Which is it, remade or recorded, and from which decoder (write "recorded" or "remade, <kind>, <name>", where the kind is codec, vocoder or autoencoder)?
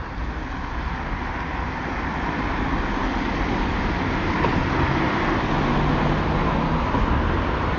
recorded